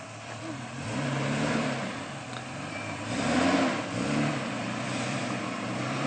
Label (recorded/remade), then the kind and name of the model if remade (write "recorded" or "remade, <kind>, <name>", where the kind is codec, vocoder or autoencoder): remade, vocoder, BigVGAN v2